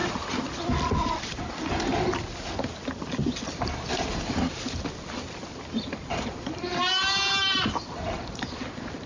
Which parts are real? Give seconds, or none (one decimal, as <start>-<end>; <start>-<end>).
0.0-9.1